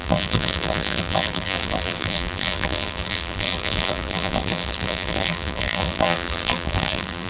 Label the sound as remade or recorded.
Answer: remade